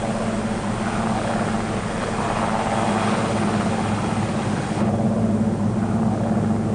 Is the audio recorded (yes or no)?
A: yes